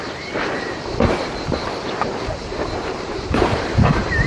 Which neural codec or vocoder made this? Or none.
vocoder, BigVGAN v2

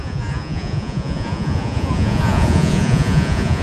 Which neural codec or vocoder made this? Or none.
vocoder, Vocos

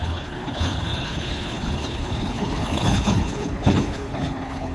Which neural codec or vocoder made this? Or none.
codec, HILCodec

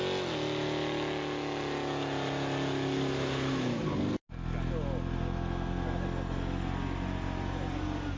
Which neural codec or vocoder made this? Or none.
none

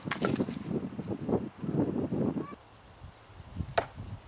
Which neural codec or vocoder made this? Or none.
none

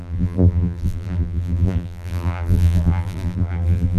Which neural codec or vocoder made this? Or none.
vocoder, BigVGAN v2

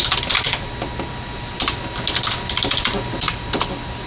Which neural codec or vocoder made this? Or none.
none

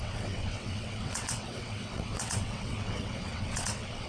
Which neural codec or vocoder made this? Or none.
vocoder, WaveNeXt